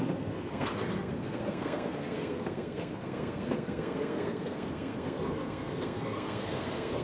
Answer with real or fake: fake